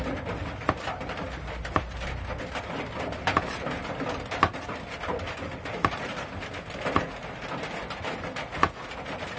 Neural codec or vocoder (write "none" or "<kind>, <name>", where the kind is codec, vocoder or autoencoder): none